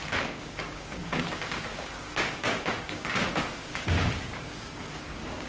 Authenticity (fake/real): fake